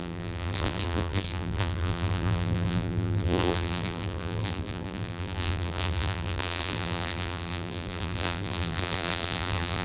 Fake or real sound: fake